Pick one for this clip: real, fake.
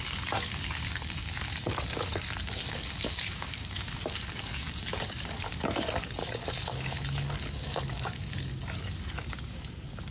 fake